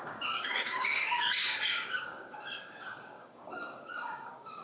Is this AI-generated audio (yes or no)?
yes